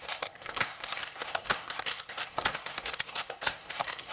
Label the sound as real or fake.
fake